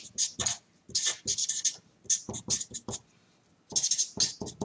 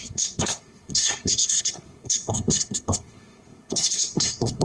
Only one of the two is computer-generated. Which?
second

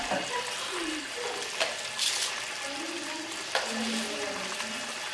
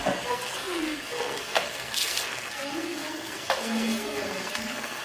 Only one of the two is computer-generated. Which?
second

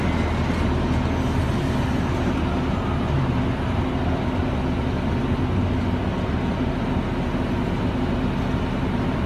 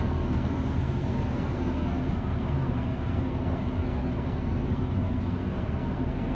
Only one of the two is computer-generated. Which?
second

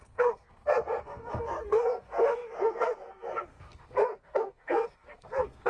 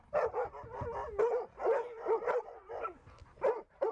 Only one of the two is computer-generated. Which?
first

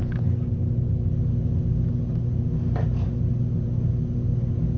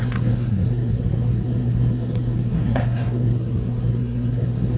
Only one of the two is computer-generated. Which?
second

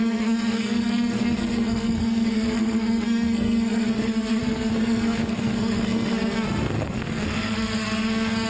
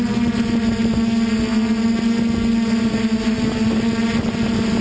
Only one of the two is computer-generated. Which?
first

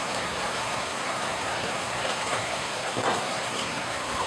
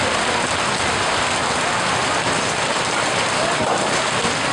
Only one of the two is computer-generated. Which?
first